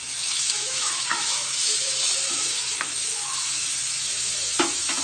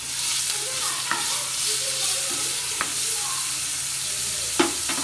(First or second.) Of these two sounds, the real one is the second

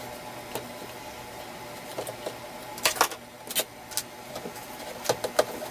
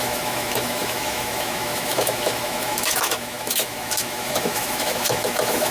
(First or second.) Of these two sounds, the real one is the first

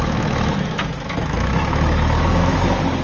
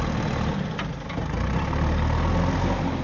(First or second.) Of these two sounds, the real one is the second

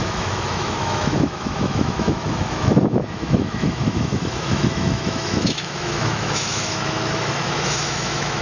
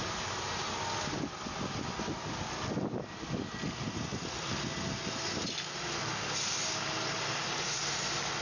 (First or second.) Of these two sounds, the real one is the second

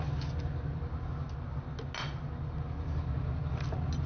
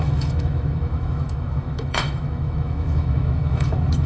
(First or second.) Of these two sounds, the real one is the first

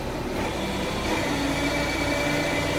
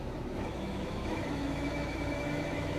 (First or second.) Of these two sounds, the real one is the first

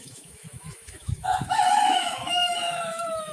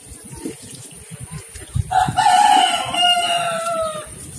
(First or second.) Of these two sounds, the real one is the second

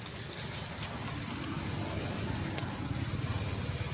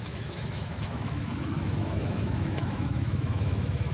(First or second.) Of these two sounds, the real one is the first